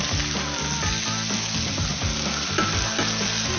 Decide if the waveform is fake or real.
real